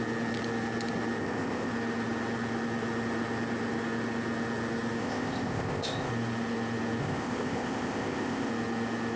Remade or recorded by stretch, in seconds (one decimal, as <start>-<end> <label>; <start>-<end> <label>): 0.0-1.2 recorded; 1.2-1.7 remade; 1.7-5.0 recorded; 5.0-6.1 remade; 6.1-7.0 recorded; 7.0-8.5 remade; 8.5-9.2 recorded